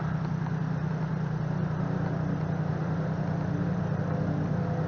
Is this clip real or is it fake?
real